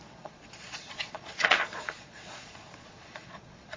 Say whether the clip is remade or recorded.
remade